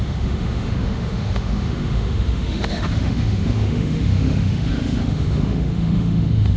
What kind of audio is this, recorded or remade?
remade